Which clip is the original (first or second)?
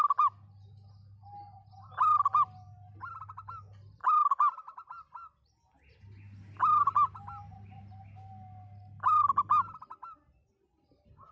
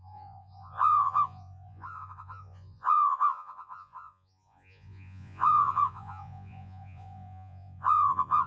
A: first